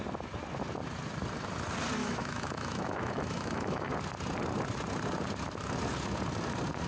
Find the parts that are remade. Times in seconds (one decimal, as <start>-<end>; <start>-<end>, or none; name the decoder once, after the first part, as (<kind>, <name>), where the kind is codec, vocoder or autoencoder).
2.0-3.9 (autoencoder, DAC-VAE)